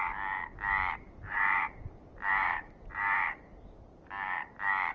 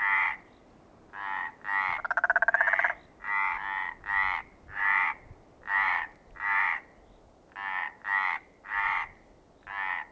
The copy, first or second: first